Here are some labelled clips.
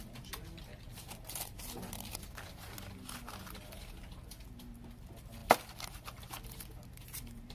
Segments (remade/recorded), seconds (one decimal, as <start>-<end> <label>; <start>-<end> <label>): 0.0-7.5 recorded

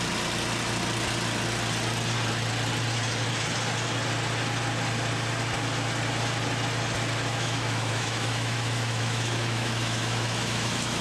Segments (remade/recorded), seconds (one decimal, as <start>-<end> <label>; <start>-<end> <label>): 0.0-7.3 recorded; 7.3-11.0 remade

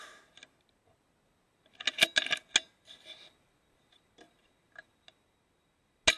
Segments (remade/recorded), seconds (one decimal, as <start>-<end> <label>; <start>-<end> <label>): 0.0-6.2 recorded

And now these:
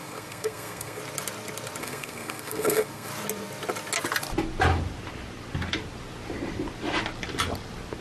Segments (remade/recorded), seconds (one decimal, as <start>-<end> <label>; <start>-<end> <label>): 0.0-1.0 remade; 1.0-1.8 recorded; 1.8-3.1 remade; 3.1-8.0 recorded

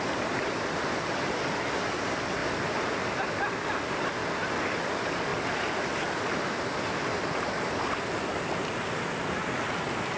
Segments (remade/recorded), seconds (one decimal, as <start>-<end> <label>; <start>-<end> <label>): 0.0-10.2 recorded